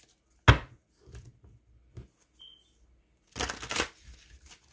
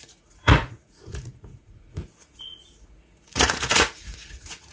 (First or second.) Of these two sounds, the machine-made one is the second